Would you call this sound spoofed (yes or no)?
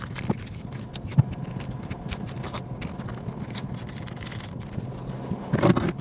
no